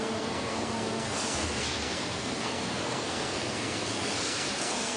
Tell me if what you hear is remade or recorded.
remade